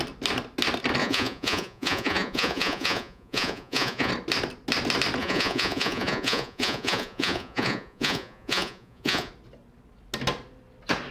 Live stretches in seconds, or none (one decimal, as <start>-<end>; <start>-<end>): 0.0-1.0; 4.1-5.2; 9.3-11.1